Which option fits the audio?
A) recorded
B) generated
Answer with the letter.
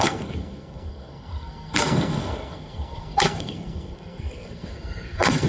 B